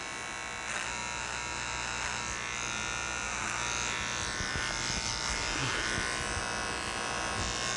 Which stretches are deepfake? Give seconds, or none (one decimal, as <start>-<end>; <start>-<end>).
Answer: none